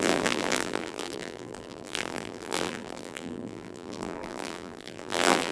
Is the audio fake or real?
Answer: fake